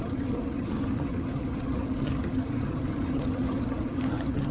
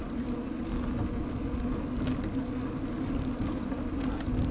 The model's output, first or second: first